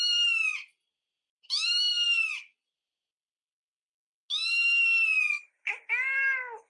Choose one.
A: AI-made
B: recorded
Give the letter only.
B